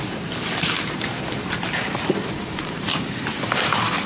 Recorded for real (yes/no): no